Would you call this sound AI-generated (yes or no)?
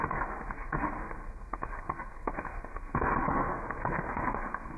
yes